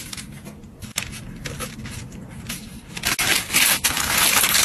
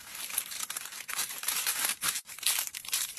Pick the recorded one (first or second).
first